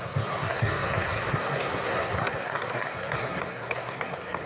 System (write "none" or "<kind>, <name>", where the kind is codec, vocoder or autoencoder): codec, SNAC